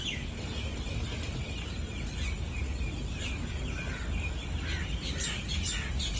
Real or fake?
real